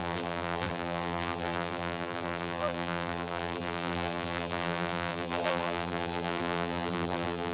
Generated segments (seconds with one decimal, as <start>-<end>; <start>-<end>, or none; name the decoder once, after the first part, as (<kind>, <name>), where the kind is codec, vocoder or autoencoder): 0.0-7.5 (vocoder, BigVGAN v2)